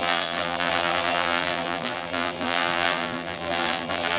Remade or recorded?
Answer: remade